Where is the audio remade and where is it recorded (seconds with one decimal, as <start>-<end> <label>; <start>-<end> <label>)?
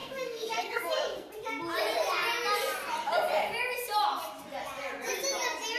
0.0-1.3 remade; 1.3-5.8 recorded